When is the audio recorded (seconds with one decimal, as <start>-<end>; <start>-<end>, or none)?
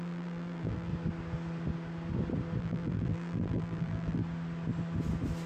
0.9-2.6; 4.2-5.5